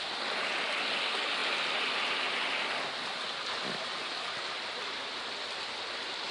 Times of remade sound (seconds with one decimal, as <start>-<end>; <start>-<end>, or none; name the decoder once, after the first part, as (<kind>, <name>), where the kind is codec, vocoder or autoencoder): none